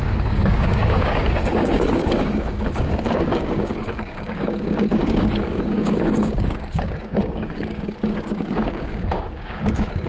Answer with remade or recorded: remade